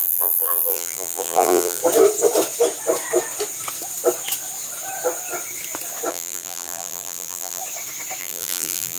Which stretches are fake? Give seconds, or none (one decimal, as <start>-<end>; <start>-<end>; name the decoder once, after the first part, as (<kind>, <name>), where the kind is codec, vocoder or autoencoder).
0.0-1.8 (vocoder, BigVGAN v2); 6.1-7.6; 8.2-9.0